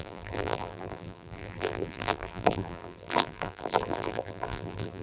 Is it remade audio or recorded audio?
remade